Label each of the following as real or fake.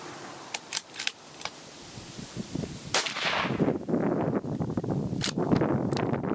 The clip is real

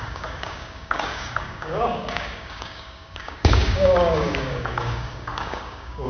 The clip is fake